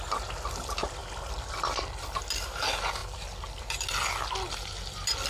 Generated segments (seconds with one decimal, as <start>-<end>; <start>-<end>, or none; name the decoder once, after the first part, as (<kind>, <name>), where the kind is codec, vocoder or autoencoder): none